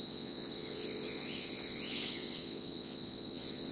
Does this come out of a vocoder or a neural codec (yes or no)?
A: yes